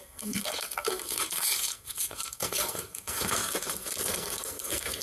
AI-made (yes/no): yes